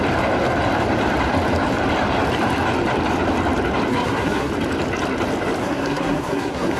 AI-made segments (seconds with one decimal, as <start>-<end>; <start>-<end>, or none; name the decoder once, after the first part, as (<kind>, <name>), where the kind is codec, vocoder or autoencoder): 3.9-4.5 (codec, SNAC); 5.6-6.8